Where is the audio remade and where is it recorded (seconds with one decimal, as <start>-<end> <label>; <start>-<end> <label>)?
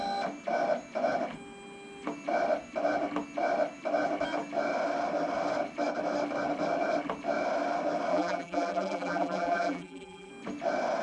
0.0-8.1 recorded; 8.1-10.3 remade; 10.3-11.0 recorded